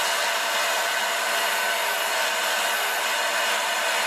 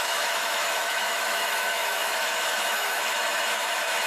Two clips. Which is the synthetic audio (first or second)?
second